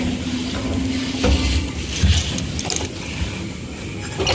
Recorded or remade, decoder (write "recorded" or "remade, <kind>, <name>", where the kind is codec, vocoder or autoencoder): recorded